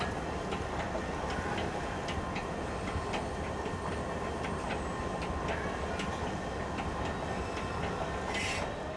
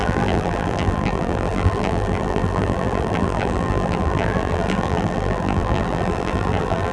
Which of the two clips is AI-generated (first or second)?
second